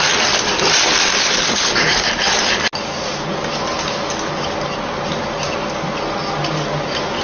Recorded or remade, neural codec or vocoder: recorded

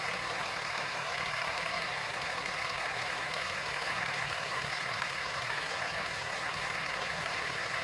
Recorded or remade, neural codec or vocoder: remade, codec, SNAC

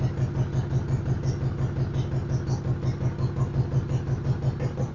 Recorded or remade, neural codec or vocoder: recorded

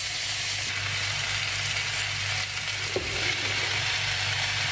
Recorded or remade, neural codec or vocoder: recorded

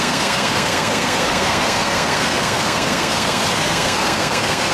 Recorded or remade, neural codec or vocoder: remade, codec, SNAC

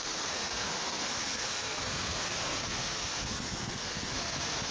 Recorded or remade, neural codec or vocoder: remade, codec, SNAC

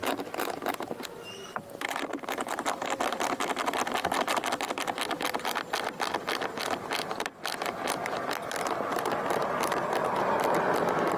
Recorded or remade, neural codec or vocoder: recorded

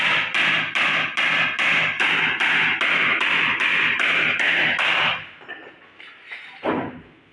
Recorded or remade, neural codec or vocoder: recorded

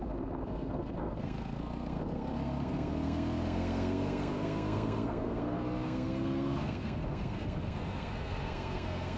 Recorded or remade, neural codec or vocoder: remade, codec, SNAC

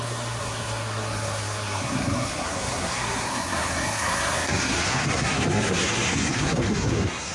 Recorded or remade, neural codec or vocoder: remade, codec, SNAC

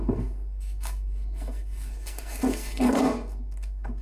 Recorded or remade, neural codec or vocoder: remade, codec, SNAC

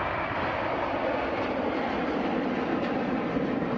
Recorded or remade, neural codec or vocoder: recorded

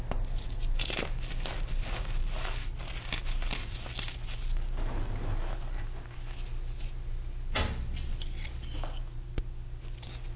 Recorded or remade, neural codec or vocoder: recorded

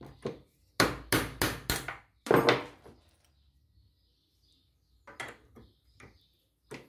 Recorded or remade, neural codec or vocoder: recorded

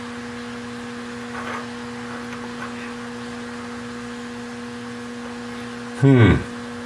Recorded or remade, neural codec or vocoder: recorded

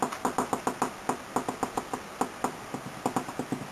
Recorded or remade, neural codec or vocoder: recorded